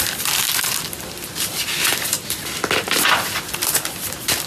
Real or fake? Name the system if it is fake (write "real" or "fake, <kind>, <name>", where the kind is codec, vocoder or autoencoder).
real